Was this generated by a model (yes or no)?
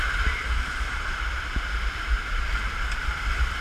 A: no